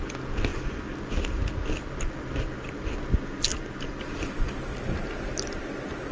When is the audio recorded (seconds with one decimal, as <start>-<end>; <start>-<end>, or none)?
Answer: 0.0-6.1